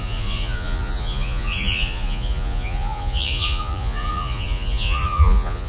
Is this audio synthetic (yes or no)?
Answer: yes